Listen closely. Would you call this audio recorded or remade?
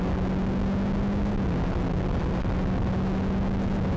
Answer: recorded